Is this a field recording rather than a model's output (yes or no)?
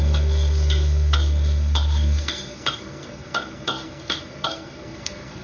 no